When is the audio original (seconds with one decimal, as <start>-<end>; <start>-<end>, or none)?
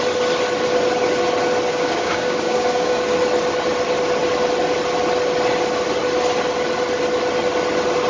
0.0-1.7; 3.2-8.1